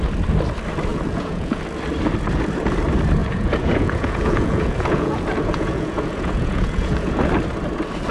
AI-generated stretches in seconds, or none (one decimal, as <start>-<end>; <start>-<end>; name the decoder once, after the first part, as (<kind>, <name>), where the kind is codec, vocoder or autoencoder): 0.9-1.6 (vocoder, Vocos); 3.2-7.3